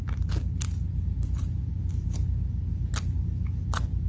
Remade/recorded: recorded